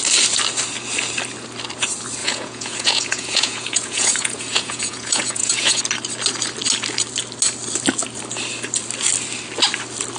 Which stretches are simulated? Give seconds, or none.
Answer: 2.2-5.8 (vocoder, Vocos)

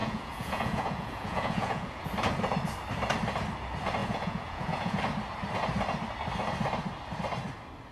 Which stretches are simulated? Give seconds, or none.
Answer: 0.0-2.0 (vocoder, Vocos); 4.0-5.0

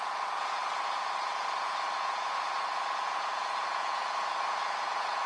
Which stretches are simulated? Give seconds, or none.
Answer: 0.0-5.3 (vocoder, Vocos)

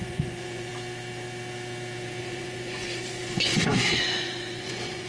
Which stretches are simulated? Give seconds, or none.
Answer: 0.0-0.7 (vocoder, Vocos); 2.2-5.1

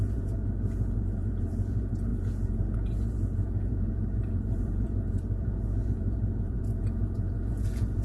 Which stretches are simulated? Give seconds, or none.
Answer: 0.0-8.0 (vocoder, Vocos)

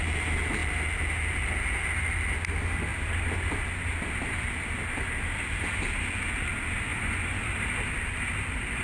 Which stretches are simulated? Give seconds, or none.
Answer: 6.9-7.4 (vocoder, Vocos)

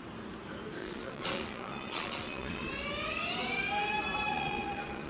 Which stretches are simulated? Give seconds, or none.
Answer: 0.8-2.7 (vocoder, Vocos); 4.3-5.1